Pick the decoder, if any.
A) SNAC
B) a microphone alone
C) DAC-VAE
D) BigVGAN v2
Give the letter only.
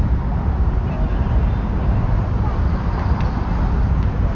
B